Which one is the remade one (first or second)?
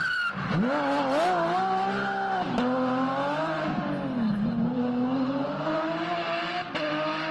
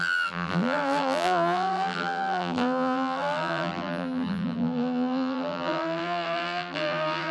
second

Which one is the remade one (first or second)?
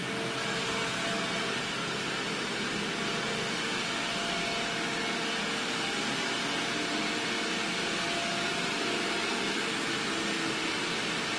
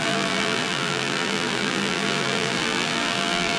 second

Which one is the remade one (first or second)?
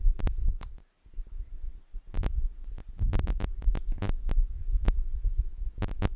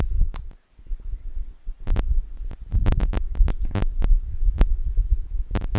second